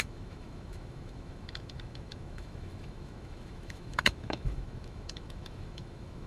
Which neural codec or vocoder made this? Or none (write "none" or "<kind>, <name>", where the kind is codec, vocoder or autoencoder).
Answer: autoencoder, DAC-VAE